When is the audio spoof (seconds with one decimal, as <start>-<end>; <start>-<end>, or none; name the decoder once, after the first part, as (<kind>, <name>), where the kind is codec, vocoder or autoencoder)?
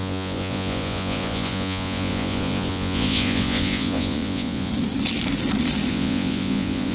0.0-4.7 (vocoder, Vocos); 5.9-6.9